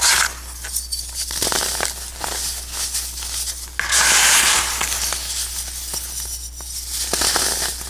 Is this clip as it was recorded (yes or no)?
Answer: yes